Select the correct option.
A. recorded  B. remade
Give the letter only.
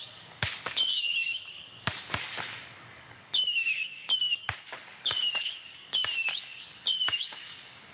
B